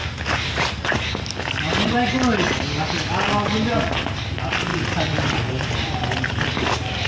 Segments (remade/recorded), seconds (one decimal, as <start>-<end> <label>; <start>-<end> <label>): 0.0-7.1 recorded